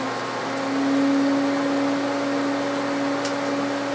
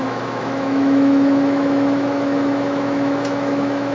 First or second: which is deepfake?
second